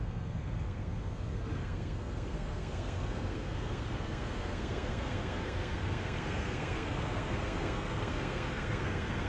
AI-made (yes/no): yes